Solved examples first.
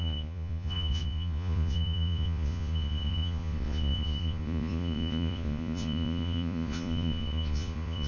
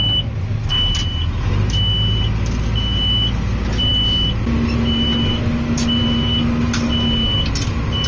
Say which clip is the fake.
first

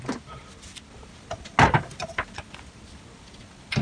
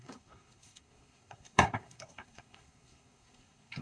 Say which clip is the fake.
second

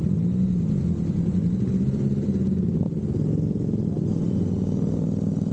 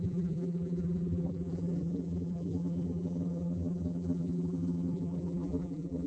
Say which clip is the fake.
second